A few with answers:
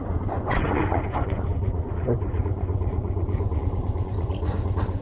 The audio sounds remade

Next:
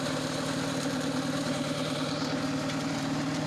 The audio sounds remade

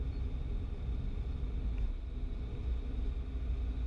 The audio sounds recorded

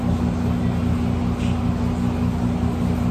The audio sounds recorded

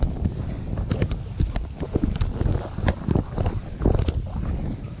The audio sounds recorded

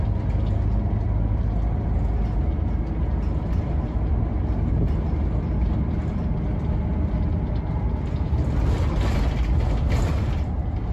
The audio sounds recorded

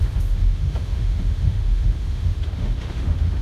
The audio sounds remade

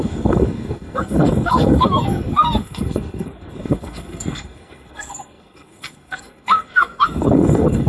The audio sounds remade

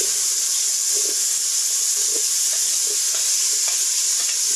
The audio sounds recorded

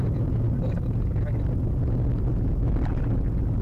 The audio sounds recorded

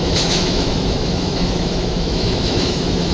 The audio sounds remade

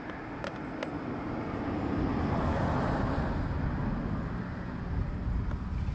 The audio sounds recorded